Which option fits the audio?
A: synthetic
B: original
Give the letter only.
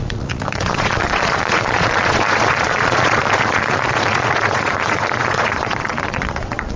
A